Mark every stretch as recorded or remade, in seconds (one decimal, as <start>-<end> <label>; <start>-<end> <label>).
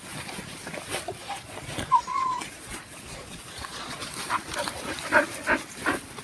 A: 0.0-1.2 recorded; 1.2-4.1 remade; 4.1-6.2 recorded